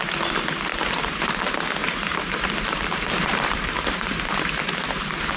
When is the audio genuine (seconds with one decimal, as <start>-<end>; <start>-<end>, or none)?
0.0-0.7; 1.3-1.8; 5.0-5.4